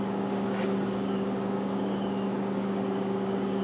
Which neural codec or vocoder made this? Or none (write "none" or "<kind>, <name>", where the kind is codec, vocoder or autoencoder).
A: codec, DAC